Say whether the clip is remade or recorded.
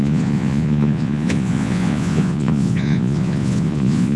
remade